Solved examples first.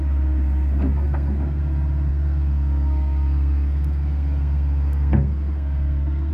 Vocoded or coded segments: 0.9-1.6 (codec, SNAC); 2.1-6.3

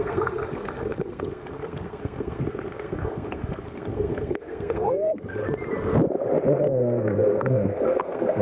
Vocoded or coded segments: 0.0-5.4 (codec, SNAC); 6.6-8.4